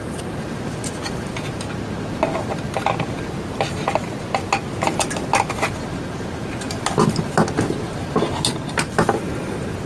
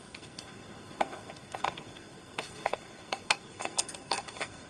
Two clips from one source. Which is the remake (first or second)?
second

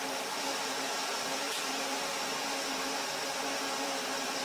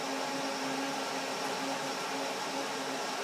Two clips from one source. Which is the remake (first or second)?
first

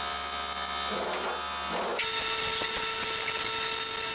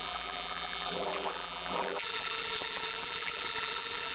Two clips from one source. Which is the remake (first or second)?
second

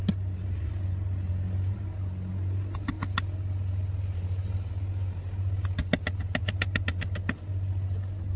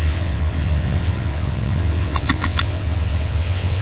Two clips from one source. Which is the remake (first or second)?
second